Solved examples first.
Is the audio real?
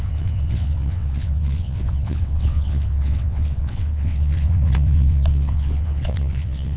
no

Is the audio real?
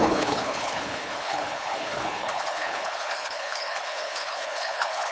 no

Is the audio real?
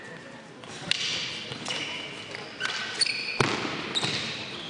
yes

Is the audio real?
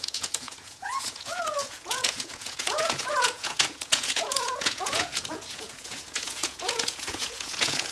no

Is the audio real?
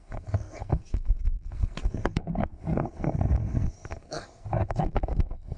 no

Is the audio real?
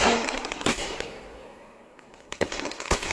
no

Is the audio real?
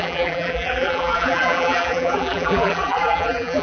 no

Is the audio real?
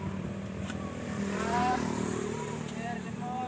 no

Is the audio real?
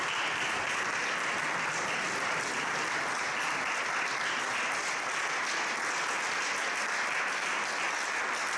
yes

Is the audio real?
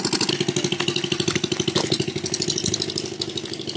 yes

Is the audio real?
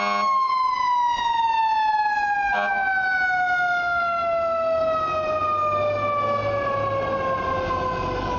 yes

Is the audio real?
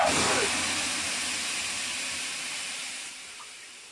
yes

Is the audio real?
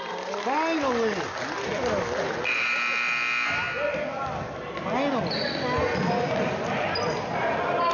yes